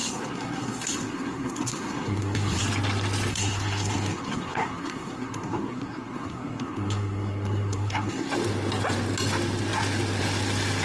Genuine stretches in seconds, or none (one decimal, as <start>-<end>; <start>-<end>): 2.6-3.3; 8.3-10.8